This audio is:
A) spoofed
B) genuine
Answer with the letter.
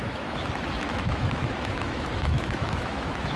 A